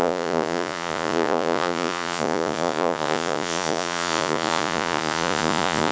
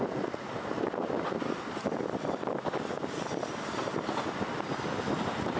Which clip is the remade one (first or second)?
first